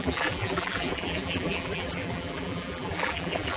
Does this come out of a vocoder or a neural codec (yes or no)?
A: yes